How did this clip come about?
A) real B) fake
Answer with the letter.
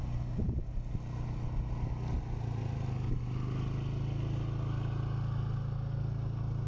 A